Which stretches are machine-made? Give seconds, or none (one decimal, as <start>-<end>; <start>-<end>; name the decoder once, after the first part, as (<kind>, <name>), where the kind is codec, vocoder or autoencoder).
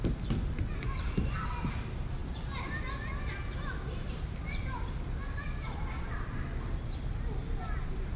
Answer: none